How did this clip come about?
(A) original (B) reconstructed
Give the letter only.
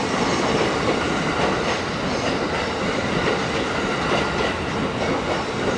A